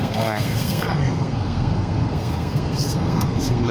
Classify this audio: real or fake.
fake